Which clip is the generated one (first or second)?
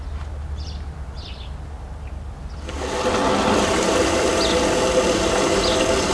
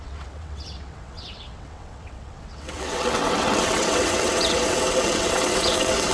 second